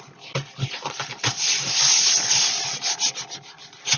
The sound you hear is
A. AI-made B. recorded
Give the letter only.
B